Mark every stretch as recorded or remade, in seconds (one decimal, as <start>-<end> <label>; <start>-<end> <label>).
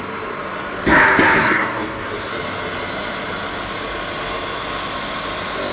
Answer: 0.0-1.4 recorded; 1.4-2.3 remade; 2.3-5.7 recorded